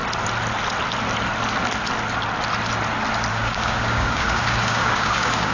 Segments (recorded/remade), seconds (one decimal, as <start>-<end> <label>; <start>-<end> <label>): 0.0-3.3 recorded; 3.3-5.5 remade